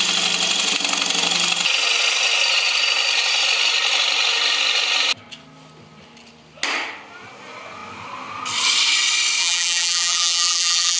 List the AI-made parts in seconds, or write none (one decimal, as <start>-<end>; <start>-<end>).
9.4-11.0